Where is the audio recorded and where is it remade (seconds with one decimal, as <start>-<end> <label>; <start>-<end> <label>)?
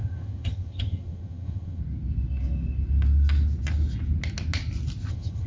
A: 0.0-1.8 remade; 1.8-5.1 recorded; 5.1-5.5 remade